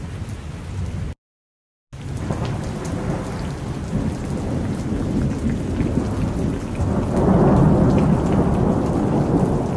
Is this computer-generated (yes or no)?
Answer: no